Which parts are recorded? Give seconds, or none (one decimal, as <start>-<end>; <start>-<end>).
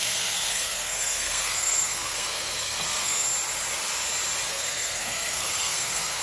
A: 3.3-4.5